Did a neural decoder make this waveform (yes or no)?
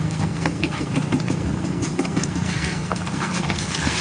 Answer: yes